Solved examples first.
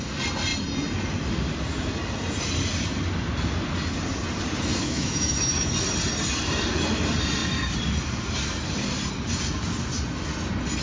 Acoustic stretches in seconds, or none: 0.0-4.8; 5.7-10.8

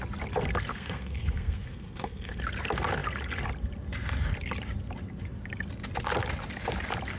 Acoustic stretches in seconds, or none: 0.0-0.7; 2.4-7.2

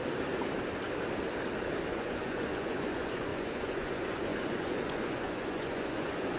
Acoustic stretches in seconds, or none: 0.0-1.9

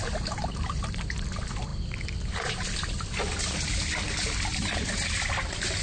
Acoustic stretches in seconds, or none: 0.0-5.8

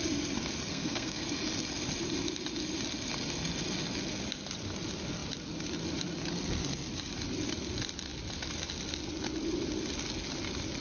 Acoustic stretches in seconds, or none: 0.0-0.7; 1.2-10.8

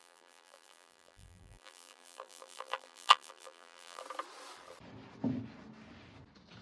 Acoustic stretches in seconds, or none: 4.0-6.6